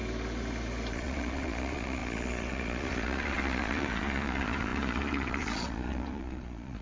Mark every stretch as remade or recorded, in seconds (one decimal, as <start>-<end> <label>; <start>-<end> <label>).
0.0-0.9 recorded; 0.9-6.8 remade